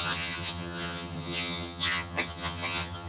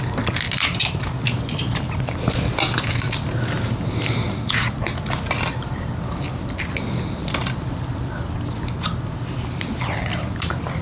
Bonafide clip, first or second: second